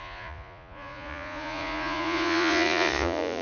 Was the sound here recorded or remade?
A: remade